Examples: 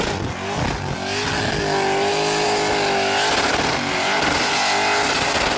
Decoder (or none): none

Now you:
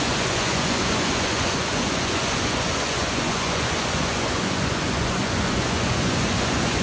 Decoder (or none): vocoder, Vocos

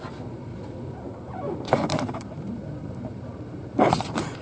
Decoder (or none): vocoder, BigVGAN v2